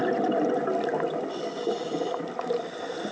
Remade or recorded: recorded